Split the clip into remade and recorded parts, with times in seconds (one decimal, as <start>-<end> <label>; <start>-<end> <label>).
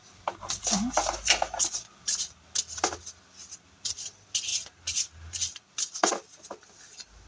0.0-7.3 recorded